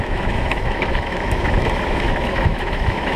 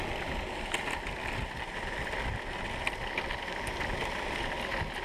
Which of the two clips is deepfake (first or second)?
first